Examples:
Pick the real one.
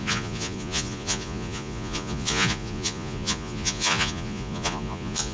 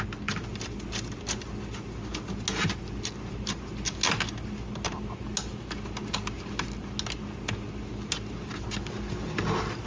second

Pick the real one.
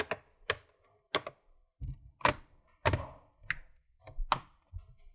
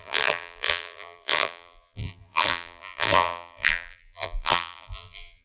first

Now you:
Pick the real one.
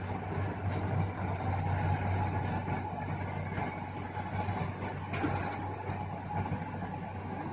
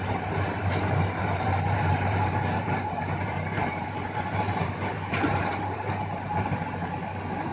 first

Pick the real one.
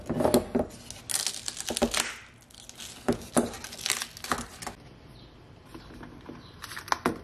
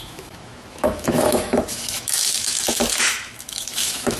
first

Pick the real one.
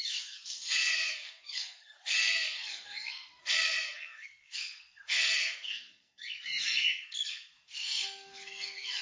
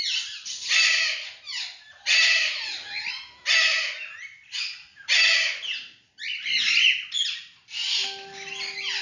second